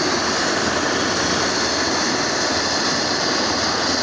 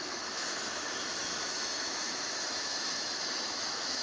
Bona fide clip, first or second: first